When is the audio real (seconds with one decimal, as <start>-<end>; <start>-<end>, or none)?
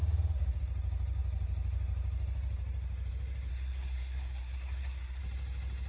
0.0-3.5; 5.2-5.9